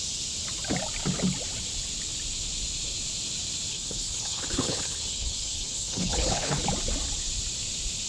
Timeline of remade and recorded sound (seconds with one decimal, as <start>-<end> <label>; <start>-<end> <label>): 0.0-3.7 recorded; 3.7-6.6 remade; 6.6-8.1 recorded

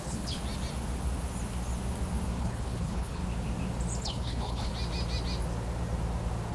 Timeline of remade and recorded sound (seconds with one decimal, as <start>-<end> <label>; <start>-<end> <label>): 0.0-0.4 remade; 0.4-2.4 recorded; 2.4-3.2 remade; 3.2-4.0 recorded; 4.0-4.7 remade; 4.7-6.5 recorded

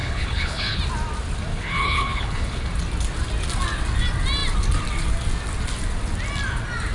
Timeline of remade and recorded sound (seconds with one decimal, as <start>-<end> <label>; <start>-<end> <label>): 0.0-0.8 remade; 0.8-1.5 recorded; 1.5-2.6 remade; 2.6-6.9 recorded

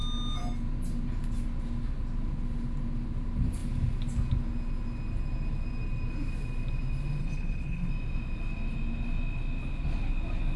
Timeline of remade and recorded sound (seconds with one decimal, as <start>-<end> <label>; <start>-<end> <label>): 0.0-7.2 recorded; 7.2-7.9 remade; 7.9-10.6 recorded

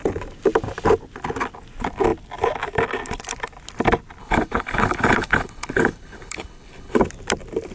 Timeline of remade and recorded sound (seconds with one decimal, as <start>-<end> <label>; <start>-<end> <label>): 0.0-4.2 recorded; 4.2-7.0 remade; 7.0-7.7 recorded

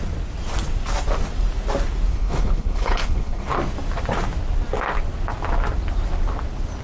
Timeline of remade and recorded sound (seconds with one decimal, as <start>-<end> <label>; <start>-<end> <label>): 0.0-2.1 recorded; 2.1-3.5 remade; 3.5-6.8 recorded